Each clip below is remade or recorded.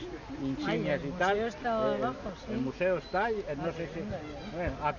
recorded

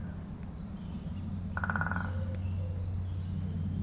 recorded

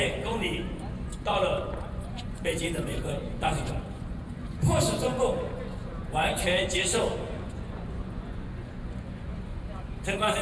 remade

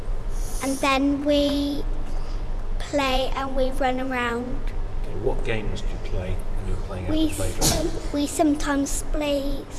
remade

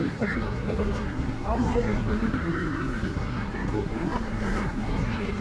remade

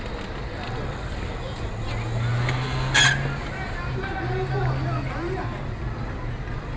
recorded